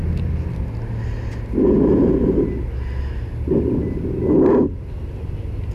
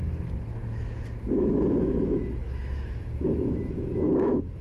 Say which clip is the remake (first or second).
second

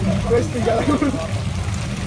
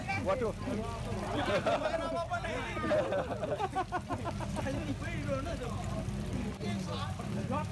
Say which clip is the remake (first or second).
first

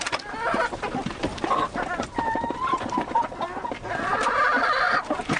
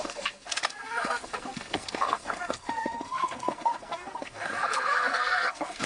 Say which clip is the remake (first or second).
second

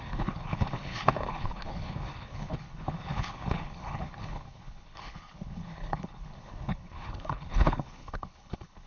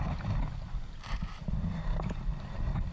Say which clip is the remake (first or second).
first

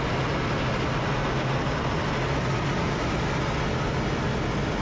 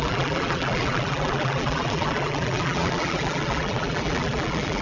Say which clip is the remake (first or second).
second